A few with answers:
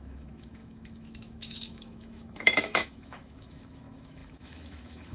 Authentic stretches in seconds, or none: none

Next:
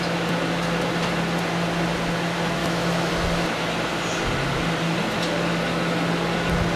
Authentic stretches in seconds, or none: 0.0-2.6; 3.1-6.8

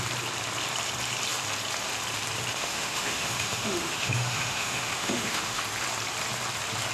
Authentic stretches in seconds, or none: 0.0-2.5; 5.6-6.9

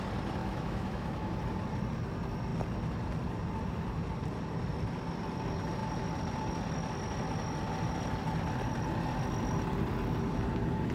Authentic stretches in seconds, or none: 0.0-0.4; 1.3-10.9

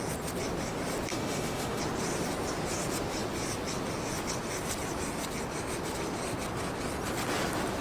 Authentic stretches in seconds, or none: 0.0-1.1; 1.8-7.8

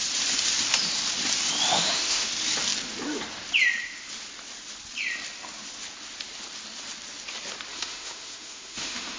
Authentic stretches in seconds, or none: 0.0-1.7; 2.3-7.7

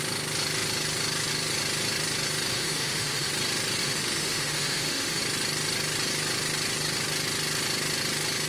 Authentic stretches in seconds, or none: 0.0-2.5; 3.3-3.8; 5.2-8.5